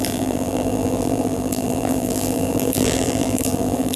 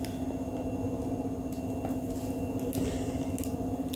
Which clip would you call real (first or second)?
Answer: second